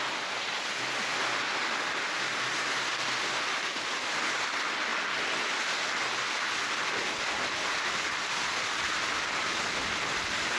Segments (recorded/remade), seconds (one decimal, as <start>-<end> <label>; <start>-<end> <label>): 0.0-10.6 recorded